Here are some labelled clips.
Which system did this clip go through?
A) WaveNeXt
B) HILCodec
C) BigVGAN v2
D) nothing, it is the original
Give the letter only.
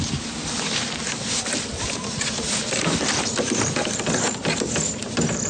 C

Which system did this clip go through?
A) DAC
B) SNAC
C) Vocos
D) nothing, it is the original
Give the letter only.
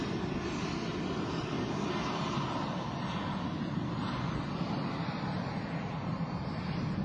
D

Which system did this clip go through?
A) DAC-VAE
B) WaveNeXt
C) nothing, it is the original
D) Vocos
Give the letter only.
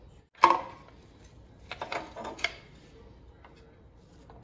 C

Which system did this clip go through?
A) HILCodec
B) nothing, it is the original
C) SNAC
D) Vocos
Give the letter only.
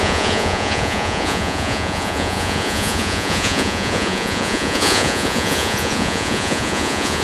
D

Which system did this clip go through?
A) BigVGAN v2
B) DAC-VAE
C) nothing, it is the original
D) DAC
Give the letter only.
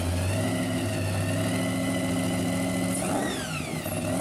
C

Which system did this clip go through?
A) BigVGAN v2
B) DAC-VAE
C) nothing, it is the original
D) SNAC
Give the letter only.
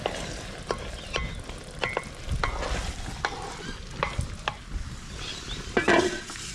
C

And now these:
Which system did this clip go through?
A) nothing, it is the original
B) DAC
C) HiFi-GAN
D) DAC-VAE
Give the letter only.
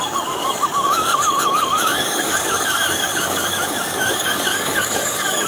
B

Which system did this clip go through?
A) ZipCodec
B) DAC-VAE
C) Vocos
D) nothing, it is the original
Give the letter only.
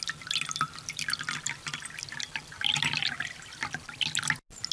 D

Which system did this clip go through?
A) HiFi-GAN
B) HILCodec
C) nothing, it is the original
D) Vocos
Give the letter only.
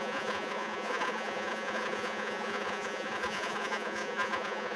D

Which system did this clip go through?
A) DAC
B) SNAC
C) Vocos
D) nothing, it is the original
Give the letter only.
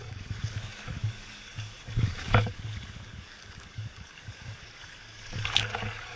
A